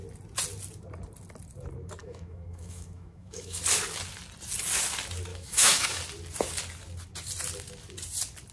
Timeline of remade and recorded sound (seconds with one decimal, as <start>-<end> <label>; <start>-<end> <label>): 0.0-2.0 recorded; 2.0-3.6 remade; 3.6-5.3 recorded; 5.3-6.0 remade; 6.0-8.5 recorded